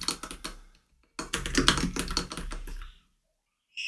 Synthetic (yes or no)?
no